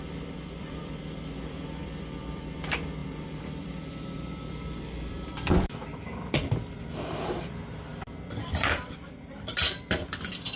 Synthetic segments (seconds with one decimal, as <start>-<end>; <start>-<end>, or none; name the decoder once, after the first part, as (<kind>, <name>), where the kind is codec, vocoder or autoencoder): 0.0-7.9 (vocoder, BigVGAN v2); 8.5-10.6